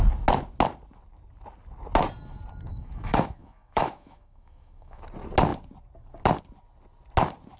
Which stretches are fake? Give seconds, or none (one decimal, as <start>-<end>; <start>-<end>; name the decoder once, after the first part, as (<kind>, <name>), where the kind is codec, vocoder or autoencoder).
2.7-5.0 (autoencoder, DAC-VAE)